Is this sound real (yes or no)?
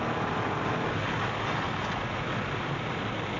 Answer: yes